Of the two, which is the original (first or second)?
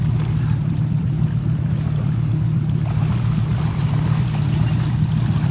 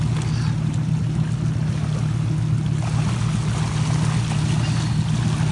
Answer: second